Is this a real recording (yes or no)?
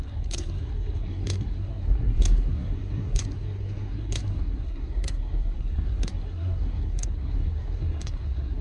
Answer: no